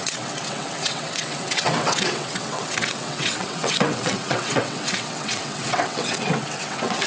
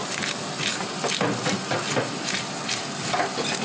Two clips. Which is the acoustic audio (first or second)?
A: second